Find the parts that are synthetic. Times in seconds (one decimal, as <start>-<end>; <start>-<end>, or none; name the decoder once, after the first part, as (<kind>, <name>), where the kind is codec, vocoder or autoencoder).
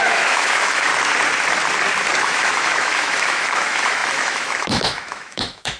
0.0-0.9 (autoencoder, DAC-VAE); 2.2-5.8